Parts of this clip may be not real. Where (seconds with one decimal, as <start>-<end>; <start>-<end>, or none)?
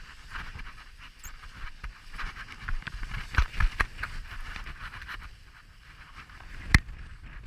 0.0-7.5